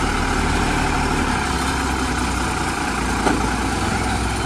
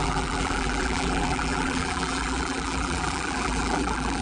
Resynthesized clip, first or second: second